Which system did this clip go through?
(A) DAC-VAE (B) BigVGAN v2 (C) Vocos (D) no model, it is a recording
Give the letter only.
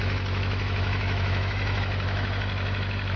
A